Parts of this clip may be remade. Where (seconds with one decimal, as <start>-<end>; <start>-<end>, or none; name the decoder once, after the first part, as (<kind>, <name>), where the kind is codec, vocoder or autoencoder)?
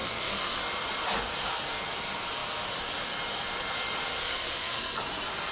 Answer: 0.0-0.6 (codec, SNAC); 4.2-5.0